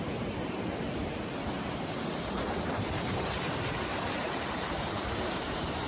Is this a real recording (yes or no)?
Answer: no